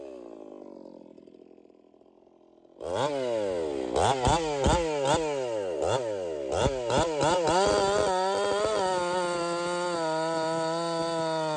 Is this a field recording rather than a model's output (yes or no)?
yes